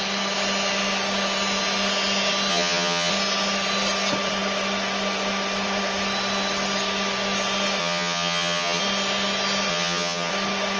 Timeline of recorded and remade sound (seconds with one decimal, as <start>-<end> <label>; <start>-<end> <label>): 0.0-2.5 recorded; 2.5-3.1 remade; 3.1-7.8 recorded; 7.8-8.8 remade; 8.8-9.7 recorded; 9.7-10.3 remade; 10.3-10.8 recorded